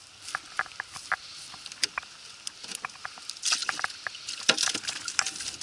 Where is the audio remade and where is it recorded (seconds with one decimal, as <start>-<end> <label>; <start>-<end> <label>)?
0.0-5.6 recorded